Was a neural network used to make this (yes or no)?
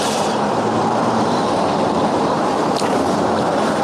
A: yes